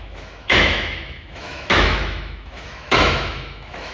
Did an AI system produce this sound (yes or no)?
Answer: yes